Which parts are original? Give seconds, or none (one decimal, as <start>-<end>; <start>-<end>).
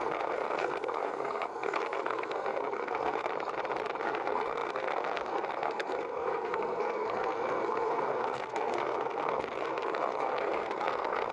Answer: 3.3-4.0